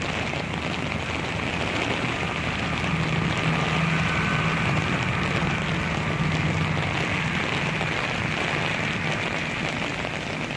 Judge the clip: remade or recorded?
recorded